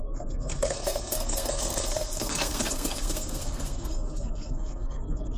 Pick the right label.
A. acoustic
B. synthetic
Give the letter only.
B